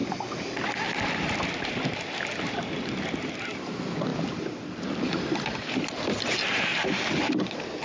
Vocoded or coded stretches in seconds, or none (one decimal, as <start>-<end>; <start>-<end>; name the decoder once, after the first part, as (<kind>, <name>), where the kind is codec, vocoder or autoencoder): 4.1-5.0 (vocoder, BigVGAN v2)